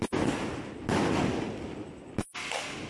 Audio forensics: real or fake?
real